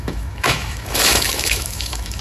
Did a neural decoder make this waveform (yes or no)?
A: yes